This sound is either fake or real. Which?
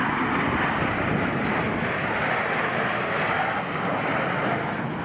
real